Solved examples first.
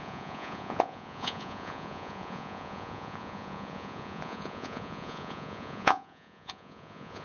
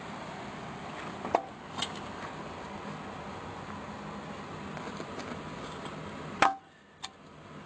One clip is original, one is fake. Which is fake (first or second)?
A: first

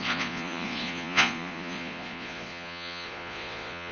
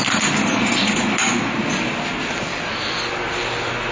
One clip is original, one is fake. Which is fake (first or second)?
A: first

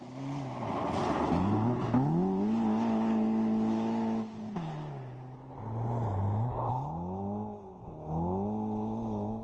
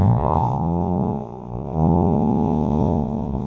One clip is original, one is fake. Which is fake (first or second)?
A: second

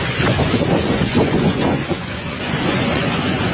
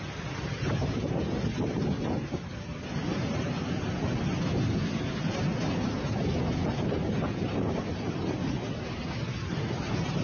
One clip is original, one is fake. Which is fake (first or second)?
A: first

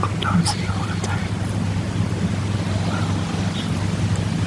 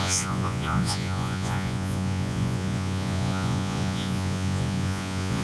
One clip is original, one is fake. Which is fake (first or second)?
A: second